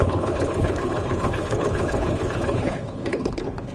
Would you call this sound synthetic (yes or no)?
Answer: yes